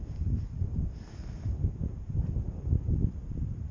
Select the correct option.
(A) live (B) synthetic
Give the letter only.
A